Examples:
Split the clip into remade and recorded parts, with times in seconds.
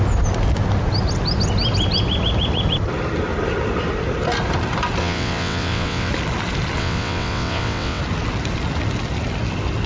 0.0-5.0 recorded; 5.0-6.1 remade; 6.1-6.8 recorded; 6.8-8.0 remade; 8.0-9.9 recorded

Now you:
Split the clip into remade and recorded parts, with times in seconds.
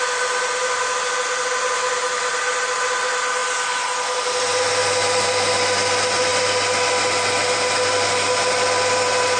0.0-9.4 recorded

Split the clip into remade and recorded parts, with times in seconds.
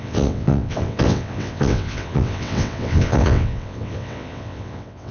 0.0-5.1 remade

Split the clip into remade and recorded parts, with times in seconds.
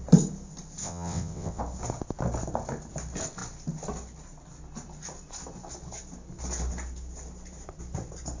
0.0-0.8 recorded; 0.8-1.6 remade; 1.6-8.4 recorded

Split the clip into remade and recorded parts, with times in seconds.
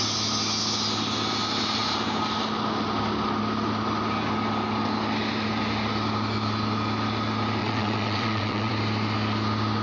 0.0-7.6 recorded; 7.6-8.7 remade; 8.7-9.8 recorded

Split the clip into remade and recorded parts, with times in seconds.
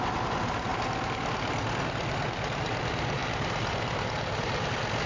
0.0-5.1 recorded